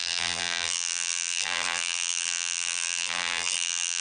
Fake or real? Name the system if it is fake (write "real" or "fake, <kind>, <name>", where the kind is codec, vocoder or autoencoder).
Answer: fake, vocoder, BigVGAN v2